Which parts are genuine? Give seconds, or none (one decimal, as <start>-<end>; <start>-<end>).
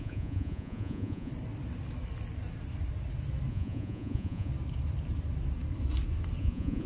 1.3-3.5; 4.5-6.4